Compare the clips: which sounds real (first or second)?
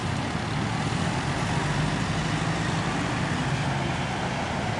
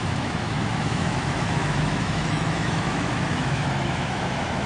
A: first